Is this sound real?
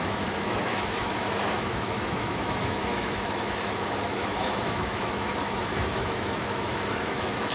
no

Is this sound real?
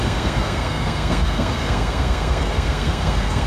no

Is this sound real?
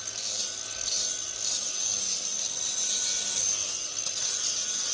yes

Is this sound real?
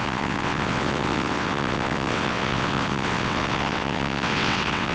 no